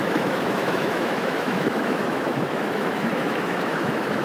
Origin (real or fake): fake